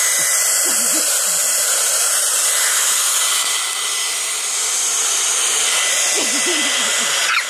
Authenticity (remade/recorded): recorded